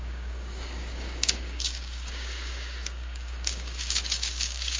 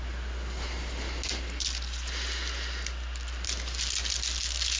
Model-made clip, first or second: first